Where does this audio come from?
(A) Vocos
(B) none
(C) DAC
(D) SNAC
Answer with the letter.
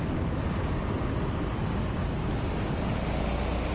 B